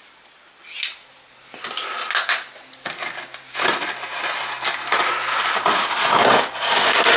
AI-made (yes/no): no